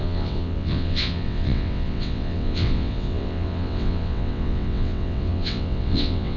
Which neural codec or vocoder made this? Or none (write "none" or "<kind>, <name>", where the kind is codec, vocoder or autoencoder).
vocoder, WaveNeXt